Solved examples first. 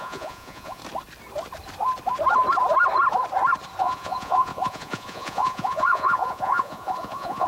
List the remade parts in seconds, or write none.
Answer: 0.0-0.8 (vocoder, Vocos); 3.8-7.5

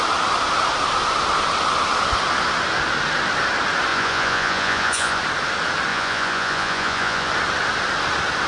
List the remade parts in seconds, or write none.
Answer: 3.9-5.2 (vocoder, Vocos); 5.9-7.3

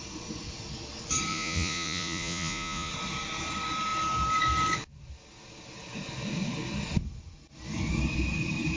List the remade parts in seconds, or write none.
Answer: 1.3-2.9 (vocoder, Vocos)

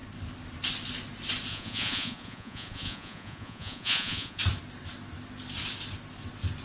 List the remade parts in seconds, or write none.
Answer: 1.5-4.4 (vocoder, Vocos)

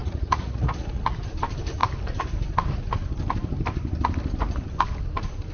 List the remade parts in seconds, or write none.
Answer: 0.0-1.0 (vocoder, Vocos)

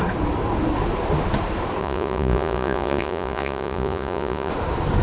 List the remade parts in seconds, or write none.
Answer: 1.8-4.5 (vocoder, Vocos)

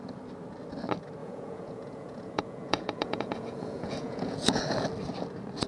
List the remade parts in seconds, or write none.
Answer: 1.2-4.6 (vocoder, Vocos)